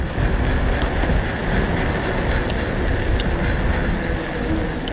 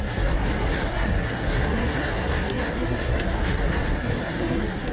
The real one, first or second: first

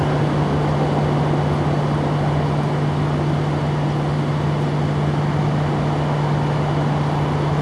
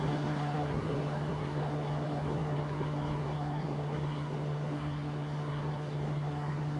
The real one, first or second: first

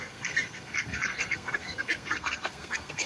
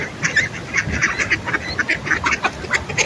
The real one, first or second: second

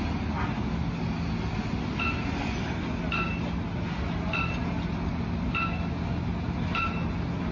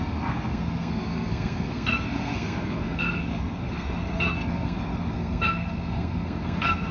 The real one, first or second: first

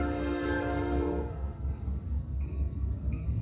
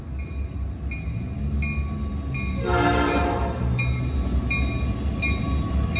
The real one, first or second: second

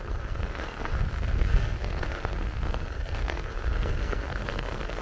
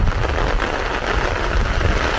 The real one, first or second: second